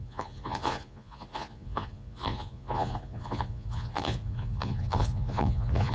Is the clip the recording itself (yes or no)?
no